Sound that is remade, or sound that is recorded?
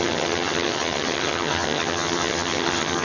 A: remade